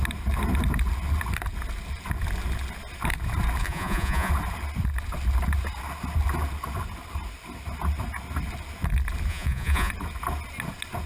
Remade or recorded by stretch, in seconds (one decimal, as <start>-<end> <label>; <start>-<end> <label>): 0.0-3.6 recorded; 3.6-4.3 remade; 4.3-9.3 recorded; 9.3-9.9 remade; 9.9-11.1 recorded